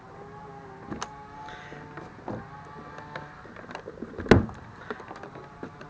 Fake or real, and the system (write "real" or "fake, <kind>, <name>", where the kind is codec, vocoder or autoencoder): real